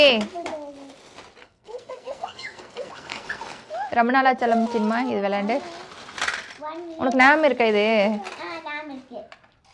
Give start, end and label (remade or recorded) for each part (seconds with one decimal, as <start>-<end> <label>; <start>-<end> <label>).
0.0-1.4 recorded; 1.4-3.7 remade; 3.7-9.7 recorded